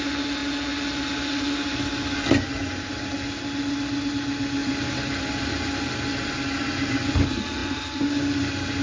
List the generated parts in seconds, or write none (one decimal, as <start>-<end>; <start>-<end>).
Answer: 4.6-5.3

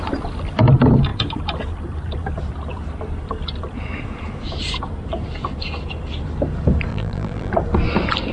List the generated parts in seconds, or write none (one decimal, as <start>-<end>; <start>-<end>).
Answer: 6.9-7.5

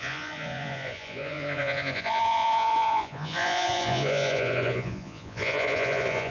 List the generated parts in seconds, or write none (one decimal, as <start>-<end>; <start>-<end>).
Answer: 0.0-6.3

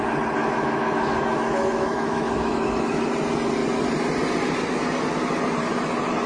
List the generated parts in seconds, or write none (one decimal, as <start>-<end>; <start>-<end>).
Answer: 0.4-3.0

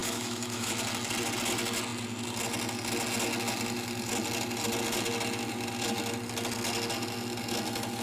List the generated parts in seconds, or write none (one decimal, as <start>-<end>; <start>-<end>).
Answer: 0.0-0.7